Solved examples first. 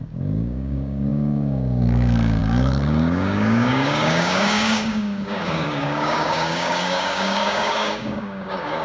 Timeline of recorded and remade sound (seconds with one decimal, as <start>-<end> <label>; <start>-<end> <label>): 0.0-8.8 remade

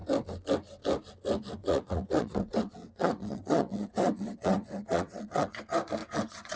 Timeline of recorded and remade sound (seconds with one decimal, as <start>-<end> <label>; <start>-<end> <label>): 0.0-1.6 recorded; 1.6-5.6 remade; 5.6-6.0 recorded; 6.0-6.6 remade

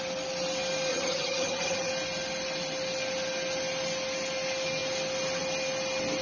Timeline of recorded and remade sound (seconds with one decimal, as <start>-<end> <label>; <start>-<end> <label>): 0.0-0.9 recorded; 0.9-1.9 remade; 1.9-6.2 recorded

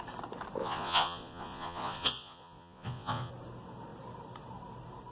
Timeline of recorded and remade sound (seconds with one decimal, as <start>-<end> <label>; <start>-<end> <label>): 0.0-0.6 recorded; 0.6-3.3 remade; 3.3-5.1 recorded